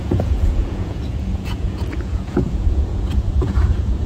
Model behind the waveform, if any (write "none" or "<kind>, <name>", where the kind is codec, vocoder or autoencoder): vocoder, Vocos